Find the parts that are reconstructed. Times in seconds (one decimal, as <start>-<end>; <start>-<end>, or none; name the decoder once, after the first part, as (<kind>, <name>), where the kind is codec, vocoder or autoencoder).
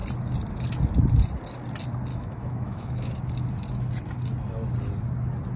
2.1-3.2 (autoencoder, DAC-VAE)